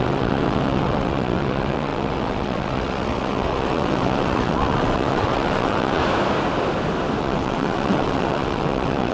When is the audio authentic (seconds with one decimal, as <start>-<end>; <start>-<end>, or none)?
6.0-7.2